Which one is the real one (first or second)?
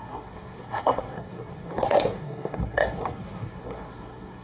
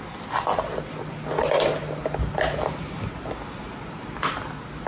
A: second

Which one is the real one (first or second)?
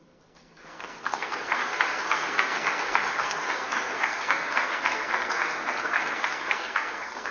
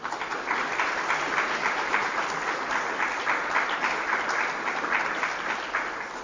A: second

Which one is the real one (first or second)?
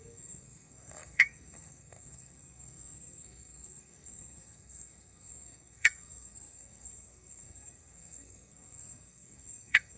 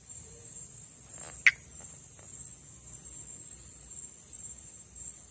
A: second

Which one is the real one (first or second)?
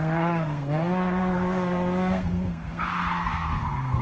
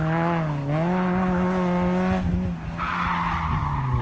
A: second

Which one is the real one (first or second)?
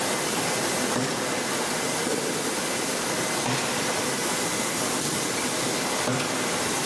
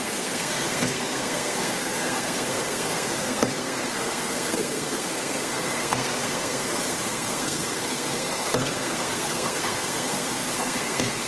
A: first